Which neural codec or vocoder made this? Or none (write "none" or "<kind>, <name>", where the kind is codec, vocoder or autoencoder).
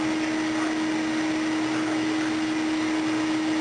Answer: none